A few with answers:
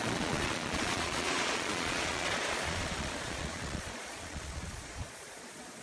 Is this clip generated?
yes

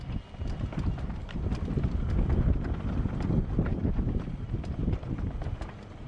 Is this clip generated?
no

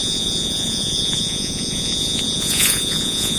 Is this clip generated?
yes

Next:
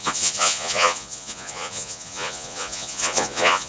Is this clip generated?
yes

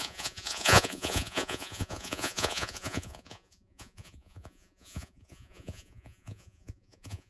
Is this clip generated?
yes